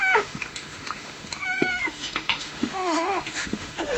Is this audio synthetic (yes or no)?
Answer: yes